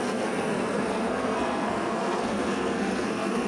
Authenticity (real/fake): fake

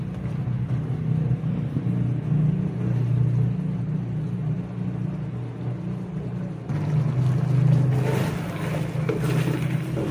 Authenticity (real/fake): real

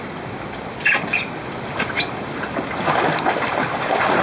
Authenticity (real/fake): real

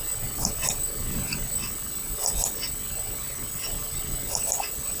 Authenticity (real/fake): real